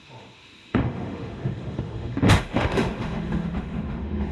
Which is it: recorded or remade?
remade